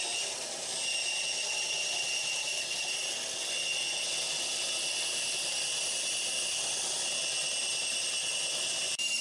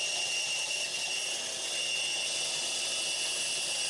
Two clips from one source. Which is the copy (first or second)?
first